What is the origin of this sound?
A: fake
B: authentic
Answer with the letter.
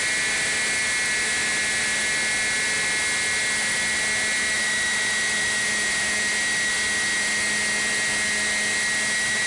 B